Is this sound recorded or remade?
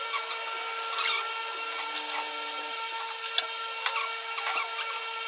recorded